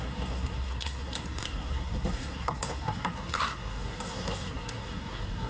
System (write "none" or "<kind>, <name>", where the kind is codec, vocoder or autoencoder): codec, SNAC